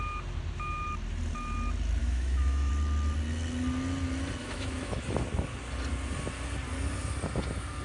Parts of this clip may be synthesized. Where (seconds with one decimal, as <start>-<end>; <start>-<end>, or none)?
2.0-2.7; 4.4-5.0

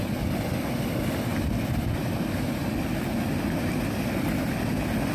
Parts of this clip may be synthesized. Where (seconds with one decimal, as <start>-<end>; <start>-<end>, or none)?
none

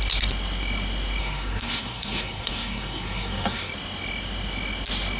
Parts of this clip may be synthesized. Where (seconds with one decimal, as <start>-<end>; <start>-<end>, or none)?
1.2-3.7

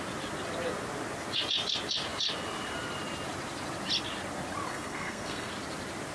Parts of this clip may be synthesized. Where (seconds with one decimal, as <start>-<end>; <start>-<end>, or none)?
4.7-5.5

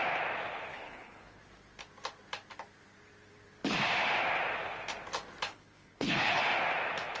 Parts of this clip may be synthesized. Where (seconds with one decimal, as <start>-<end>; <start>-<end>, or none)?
0.7-1.4; 5.5-6.4

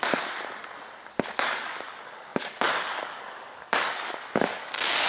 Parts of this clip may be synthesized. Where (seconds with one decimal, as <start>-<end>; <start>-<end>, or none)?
0.0-0.6; 1.5-5.1

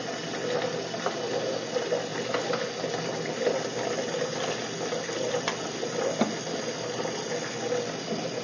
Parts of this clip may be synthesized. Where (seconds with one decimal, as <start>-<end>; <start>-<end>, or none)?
none